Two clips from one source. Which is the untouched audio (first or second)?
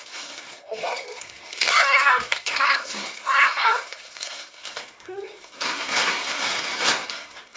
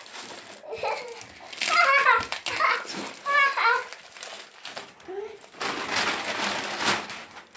second